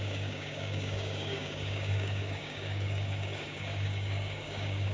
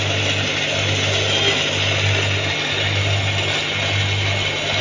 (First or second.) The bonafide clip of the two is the second